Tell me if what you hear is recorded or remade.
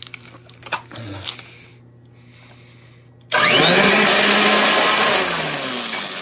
recorded